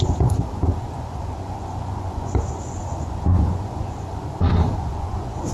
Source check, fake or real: fake